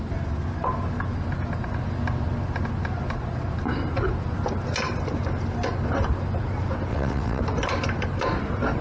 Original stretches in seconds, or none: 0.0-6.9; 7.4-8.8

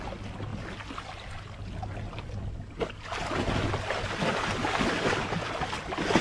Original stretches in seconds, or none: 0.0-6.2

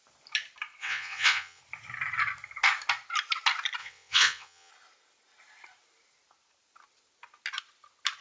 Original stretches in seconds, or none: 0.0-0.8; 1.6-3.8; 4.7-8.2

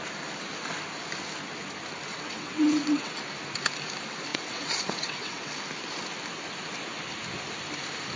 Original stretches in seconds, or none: 0.0-2.1; 3.2-4.3; 5.5-8.2

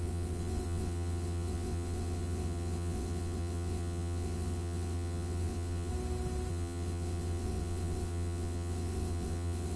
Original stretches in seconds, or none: 5.9-6.5

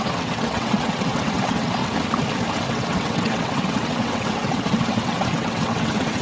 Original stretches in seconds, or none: 1.8-2.5

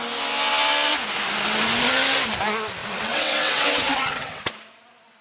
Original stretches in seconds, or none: 0.0-2.8; 4.5-5.2